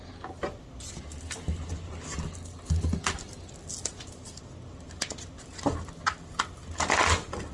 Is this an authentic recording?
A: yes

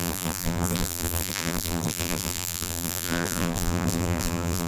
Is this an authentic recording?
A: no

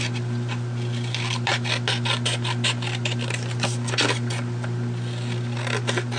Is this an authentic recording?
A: yes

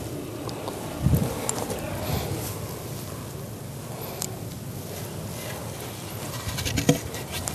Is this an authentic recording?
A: yes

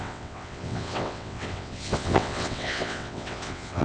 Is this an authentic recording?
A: no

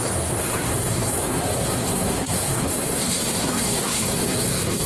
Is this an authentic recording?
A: no